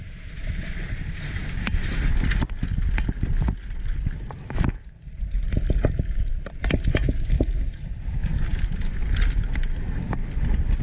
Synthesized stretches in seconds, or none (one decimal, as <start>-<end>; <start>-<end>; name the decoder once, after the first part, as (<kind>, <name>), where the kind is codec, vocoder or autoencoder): 0.0-1.9 (vocoder, BigVGAN v2); 6.3-8.5

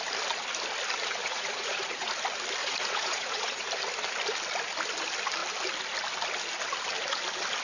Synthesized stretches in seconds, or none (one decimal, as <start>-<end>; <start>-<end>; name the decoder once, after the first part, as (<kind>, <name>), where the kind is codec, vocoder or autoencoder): 1.2-2.1 (vocoder, Vocos); 2.6-3.7

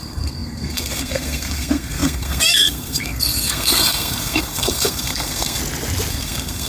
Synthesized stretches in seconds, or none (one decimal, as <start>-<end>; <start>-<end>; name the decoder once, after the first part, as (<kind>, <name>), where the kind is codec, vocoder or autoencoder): 0.0-5.6 (codec, SNAC); 6.1-6.7

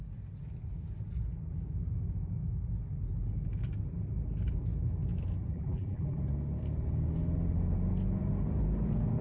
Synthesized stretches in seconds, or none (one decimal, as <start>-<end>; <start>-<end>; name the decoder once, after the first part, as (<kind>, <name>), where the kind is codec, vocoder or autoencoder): 5.5-6.2 (vocoder, BigVGAN v2)

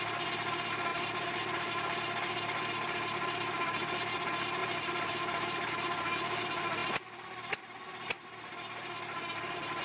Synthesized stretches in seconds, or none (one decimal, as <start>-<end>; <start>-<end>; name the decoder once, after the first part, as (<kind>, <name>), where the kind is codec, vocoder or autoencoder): 0.9-1.7 (vocoder, BigVGAN v2); 4.6-5.7